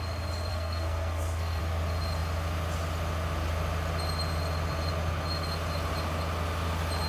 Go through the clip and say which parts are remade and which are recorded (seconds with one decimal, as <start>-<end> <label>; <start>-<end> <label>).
0.0-0.5 recorded; 0.5-1.6 remade; 1.6-7.1 recorded